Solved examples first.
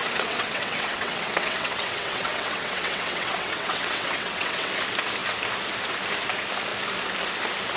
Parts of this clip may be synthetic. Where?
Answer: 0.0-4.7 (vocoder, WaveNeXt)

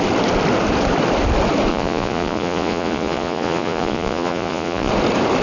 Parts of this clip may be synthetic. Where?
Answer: 1.7-4.9 (vocoder, Vocos)

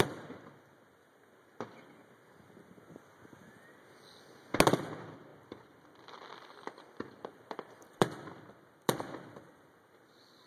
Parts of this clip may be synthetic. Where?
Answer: 5.3-10.1 (vocoder, BigVGAN v2)

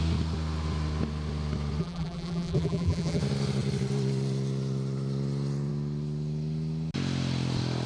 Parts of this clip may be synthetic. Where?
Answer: 1.8-3.2 (vocoder, BigVGAN v2)